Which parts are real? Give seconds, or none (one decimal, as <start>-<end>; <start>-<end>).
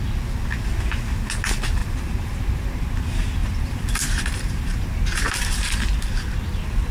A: 0.0-1.8; 2.9-3.4; 5.8-6.9